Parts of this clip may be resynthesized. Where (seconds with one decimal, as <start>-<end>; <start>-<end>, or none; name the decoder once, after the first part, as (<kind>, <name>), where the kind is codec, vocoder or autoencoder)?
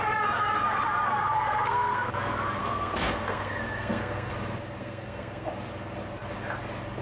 1.2-2.1 (codec, SNAC); 2.6-4.3; 4.8-5.5